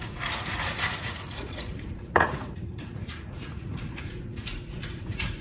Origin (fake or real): fake